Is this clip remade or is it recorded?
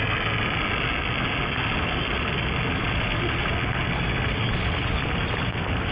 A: recorded